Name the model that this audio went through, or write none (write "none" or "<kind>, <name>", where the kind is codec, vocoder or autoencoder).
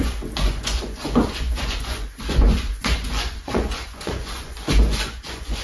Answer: vocoder, Vocos